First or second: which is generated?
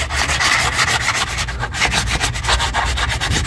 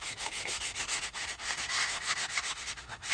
second